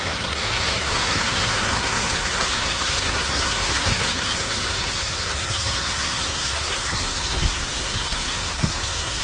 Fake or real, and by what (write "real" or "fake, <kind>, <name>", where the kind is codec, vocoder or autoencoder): fake, codec, SNAC